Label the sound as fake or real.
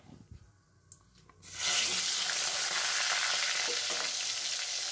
real